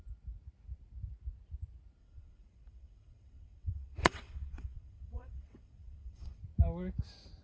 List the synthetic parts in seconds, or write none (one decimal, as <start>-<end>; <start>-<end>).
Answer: 2.0-6.4